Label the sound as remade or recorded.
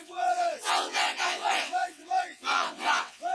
remade